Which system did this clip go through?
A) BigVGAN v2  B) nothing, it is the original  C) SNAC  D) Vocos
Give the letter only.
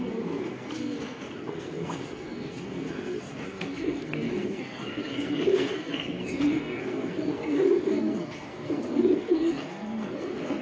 C